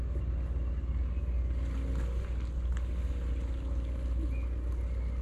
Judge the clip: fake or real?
real